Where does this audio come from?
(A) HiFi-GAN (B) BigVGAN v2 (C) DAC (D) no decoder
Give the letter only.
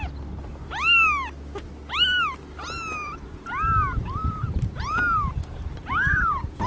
D